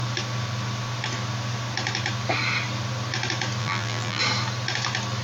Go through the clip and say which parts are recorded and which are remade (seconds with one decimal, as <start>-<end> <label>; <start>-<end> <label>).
0.0-3.6 recorded; 3.6-4.2 remade; 4.2-5.2 recorded